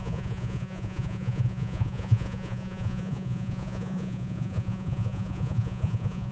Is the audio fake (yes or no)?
yes